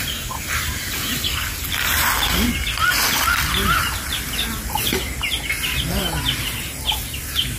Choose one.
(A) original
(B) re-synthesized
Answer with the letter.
A